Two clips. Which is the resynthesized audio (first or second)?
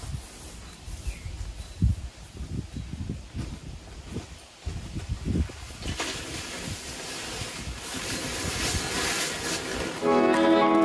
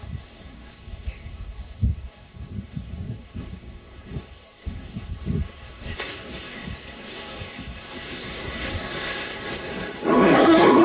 second